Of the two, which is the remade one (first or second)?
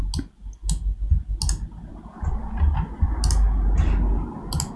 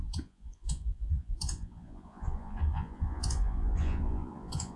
second